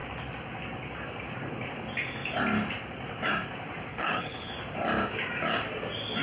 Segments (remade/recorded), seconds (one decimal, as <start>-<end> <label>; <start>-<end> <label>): 0.0-3.9 recorded; 3.9-4.5 remade; 4.5-6.2 recorded